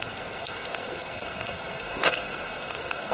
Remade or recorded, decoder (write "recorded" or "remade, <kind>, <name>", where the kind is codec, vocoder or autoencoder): remade, codec, SNAC